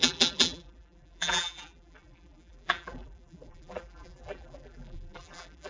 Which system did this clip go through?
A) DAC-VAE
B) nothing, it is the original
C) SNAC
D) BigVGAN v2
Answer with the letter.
D